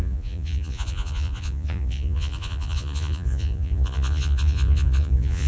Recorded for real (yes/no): no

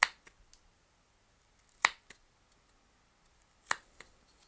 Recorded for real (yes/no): yes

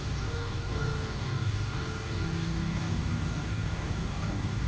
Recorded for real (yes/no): no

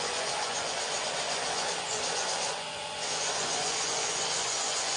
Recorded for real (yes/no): no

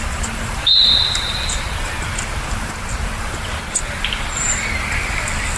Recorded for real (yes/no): yes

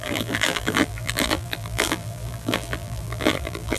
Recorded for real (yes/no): no